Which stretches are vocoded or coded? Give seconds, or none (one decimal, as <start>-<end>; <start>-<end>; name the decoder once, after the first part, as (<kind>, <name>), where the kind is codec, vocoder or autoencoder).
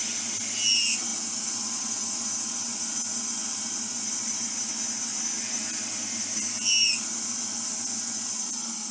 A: none